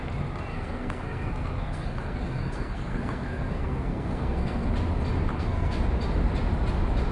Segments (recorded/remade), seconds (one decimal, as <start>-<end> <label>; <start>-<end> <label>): 0.0-0.5 recorded; 0.5-4.7 remade; 4.7-5.3 recorded; 5.3-5.8 remade; 5.8-7.1 recorded